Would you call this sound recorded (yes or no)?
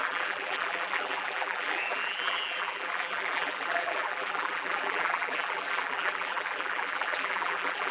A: no